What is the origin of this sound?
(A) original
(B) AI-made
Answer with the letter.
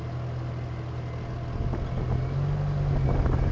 A